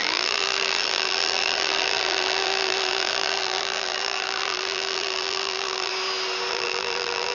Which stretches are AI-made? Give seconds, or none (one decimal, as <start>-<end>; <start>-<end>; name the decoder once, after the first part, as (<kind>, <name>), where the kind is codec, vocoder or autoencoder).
0.0-5.9 (vocoder, BigVGAN v2); 6.5-7.3

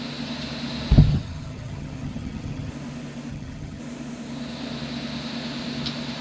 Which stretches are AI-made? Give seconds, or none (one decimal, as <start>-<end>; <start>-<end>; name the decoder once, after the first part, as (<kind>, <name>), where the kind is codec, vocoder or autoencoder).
1.1-2.7 (vocoder, HiFi-GAN); 3.3-3.8

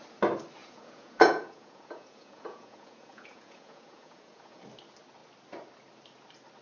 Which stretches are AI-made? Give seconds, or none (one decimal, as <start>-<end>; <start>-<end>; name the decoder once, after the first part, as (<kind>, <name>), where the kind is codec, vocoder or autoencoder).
0.6-4.6 (vocoder, Vocos)

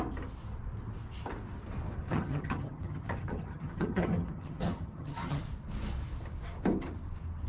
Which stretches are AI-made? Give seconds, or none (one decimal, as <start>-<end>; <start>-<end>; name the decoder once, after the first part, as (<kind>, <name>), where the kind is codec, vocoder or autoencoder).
2.1-5.4 (vocoder, HiFi-GAN)

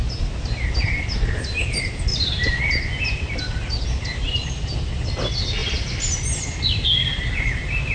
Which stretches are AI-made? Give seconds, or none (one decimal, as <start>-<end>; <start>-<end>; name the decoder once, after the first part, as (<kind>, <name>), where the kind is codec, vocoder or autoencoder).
2.1-2.6 (vocoder, BigVGAN v2); 5.6-7.9

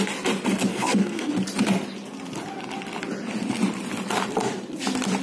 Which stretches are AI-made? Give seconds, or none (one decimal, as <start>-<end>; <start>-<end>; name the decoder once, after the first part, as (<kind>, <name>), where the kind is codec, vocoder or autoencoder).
0.7-1.3 (codec, SNAC)

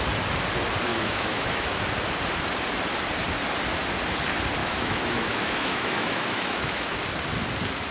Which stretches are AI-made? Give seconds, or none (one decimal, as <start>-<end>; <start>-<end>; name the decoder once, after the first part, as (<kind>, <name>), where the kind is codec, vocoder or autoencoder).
0.9-1.8 (autoencoder, DAC-VAE); 4.6-7.0